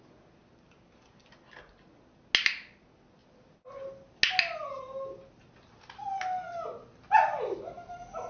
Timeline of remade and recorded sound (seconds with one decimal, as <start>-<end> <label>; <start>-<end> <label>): 0.0-8.3 recorded